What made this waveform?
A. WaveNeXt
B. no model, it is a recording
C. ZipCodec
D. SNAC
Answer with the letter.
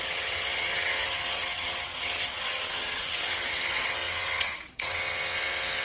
A